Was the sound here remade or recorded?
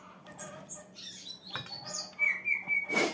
recorded